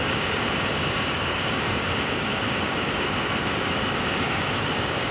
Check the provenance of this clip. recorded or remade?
remade